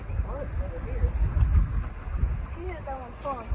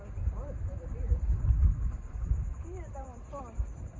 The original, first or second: first